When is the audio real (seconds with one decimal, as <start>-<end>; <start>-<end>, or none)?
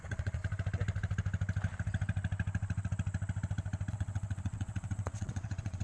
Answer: 0.4-3.9